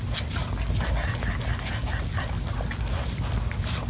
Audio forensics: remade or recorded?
recorded